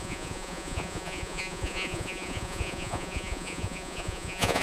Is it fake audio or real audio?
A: fake